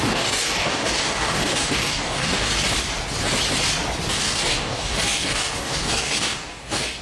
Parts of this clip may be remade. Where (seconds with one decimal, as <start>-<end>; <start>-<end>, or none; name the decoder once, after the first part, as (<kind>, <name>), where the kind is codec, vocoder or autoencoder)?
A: 0.0-2.5 (codec, DAC); 4.1-7.0